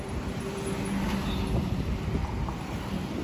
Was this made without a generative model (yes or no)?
yes